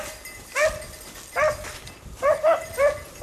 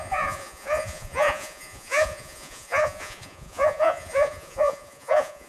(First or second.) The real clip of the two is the first